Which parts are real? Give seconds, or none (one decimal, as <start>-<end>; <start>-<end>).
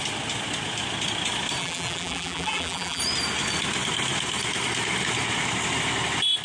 0.0-1.6; 3.0-6.4